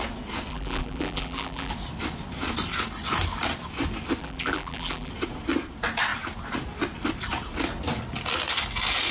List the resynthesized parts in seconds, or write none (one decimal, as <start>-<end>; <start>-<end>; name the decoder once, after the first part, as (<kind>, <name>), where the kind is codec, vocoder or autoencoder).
0.5-1.7 (vocoder, BigVGAN v2); 4.2-5.1